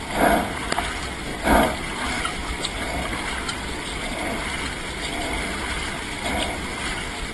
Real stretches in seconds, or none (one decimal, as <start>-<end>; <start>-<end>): 0.0-7.3